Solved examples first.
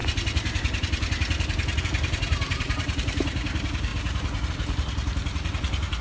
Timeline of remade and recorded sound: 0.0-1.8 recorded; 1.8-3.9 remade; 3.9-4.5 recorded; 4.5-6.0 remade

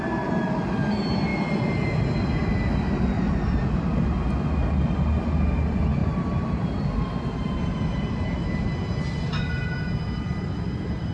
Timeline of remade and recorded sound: 0.0-6.0 recorded; 6.0-8.7 remade; 8.7-11.1 recorded